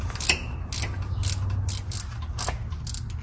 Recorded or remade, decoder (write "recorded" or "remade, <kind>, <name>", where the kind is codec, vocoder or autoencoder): recorded